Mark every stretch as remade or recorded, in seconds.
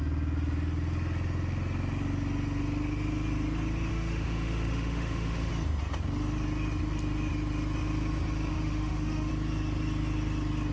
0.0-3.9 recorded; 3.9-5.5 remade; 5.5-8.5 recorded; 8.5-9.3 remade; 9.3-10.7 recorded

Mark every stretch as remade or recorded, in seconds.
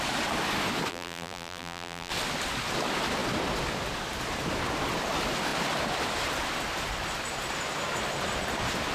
0.0-0.9 recorded; 0.9-2.1 remade; 2.1-8.9 recorded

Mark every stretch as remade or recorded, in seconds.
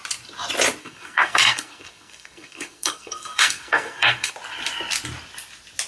0.0-0.8 recorded; 0.8-4.3 remade; 4.3-5.9 recorded